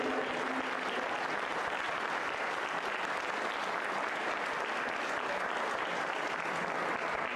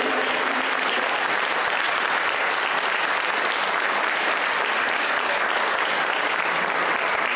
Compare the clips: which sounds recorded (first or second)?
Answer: first